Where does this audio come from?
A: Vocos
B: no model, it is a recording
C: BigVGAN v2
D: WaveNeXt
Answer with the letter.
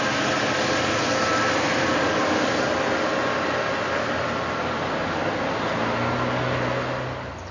B